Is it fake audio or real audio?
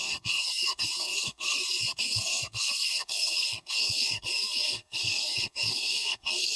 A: fake